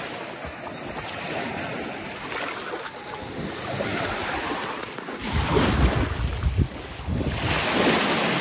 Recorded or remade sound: recorded